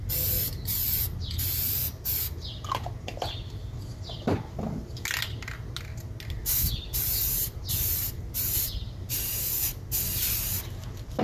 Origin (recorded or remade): recorded